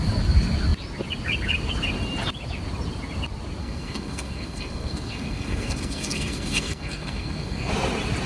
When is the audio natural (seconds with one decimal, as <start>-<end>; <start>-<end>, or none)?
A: 0.0-3.6; 7.7-8.3